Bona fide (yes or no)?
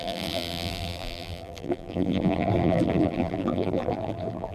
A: no